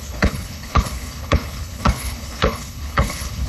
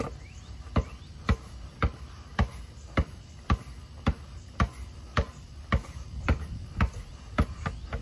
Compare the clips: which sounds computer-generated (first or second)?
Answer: first